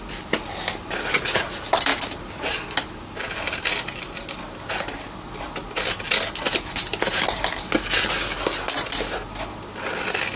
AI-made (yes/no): no